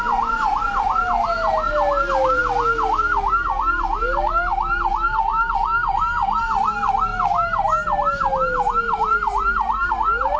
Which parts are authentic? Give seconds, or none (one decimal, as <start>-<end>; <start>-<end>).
0.0-10.4